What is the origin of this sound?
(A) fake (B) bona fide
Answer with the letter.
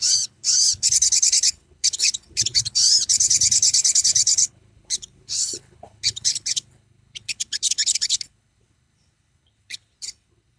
A